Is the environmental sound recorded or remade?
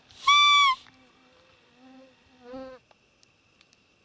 recorded